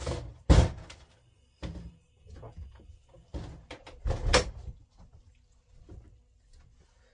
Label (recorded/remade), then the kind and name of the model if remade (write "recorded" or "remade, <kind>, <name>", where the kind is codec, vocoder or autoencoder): recorded